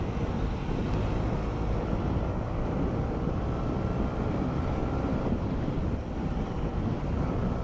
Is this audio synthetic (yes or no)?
yes